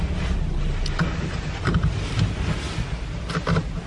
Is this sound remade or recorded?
recorded